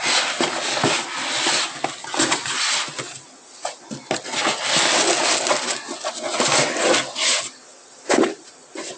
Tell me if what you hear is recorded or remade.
recorded